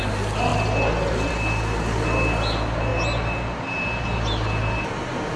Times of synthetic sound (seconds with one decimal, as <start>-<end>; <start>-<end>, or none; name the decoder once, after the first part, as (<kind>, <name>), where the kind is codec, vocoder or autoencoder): none